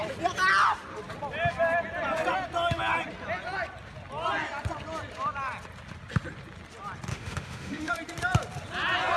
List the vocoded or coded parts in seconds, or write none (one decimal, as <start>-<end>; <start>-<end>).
7.1-7.9